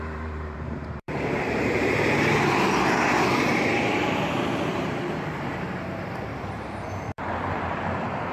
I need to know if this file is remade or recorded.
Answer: remade